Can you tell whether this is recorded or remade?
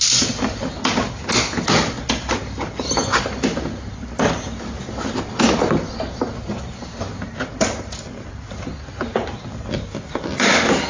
recorded